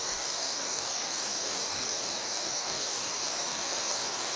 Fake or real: fake